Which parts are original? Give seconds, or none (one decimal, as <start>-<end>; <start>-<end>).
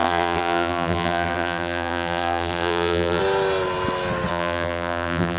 3.2-4.3